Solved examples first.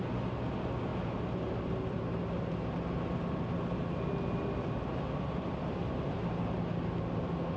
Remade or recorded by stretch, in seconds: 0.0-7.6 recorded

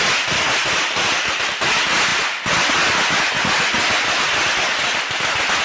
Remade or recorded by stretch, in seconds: 0.0-5.6 recorded

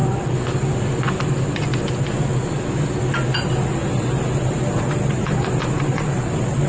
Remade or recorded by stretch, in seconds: 0.0-1.8 remade; 1.8-6.7 recorded

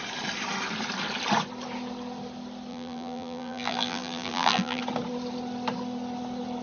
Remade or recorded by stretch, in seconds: 0.0-2.7 recorded; 2.7-4.8 remade; 4.8-6.6 recorded

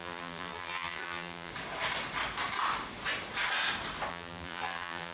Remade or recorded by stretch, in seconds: 0.0-1.5 remade; 1.5-4.1 recorded; 4.1-5.1 remade

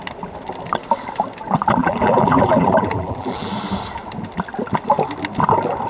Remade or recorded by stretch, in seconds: 0.0-1.8 recorded; 1.8-3.5 remade; 3.5-5.9 recorded

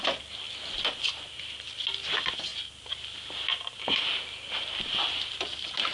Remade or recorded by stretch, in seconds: 0.0-5.9 recorded